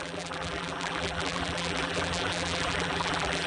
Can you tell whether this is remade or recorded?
remade